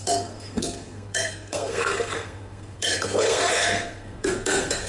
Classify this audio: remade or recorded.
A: remade